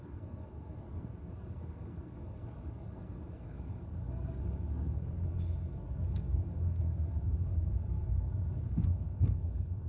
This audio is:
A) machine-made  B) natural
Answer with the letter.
A